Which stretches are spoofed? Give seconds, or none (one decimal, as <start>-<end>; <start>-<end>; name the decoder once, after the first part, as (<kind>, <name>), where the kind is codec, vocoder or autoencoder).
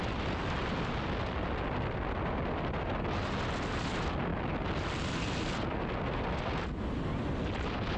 none